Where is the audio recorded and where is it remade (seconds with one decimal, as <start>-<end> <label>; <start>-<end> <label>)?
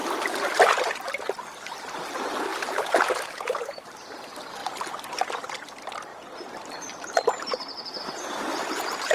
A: 0.0-2.5 recorded; 2.5-4.1 remade; 4.1-6.1 recorded; 6.1-8.0 remade; 8.0-9.1 recorded